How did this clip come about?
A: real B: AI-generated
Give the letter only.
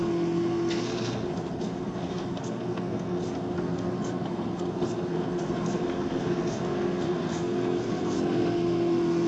B